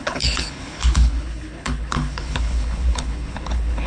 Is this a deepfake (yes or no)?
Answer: yes